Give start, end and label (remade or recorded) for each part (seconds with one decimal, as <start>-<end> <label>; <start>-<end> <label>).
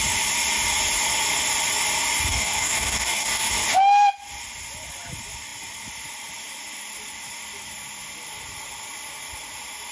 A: 0.0-2.3 recorded; 2.3-3.5 remade; 3.5-9.9 recorded